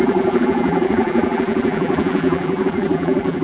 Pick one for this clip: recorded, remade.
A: remade